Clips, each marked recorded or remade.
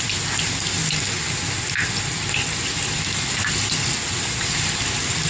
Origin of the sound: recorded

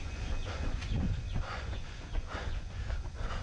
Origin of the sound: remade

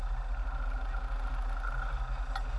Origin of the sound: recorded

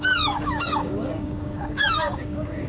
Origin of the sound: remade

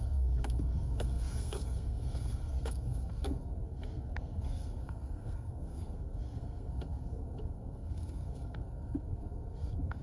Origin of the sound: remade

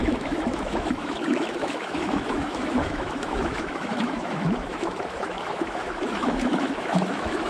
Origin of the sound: remade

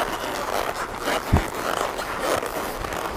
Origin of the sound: recorded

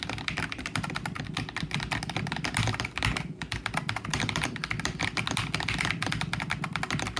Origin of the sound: recorded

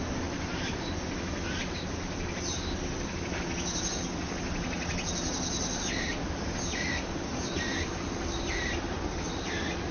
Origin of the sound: recorded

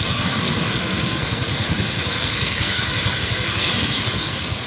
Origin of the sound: remade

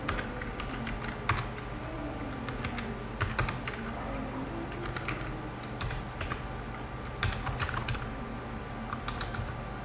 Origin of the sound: recorded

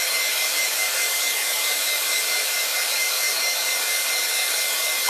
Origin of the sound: remade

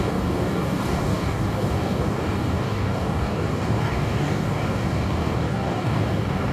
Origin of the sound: remade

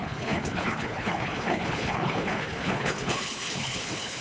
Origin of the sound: remade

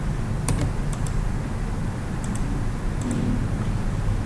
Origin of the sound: recorded